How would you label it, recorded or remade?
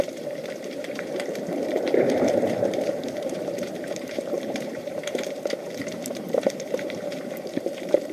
remade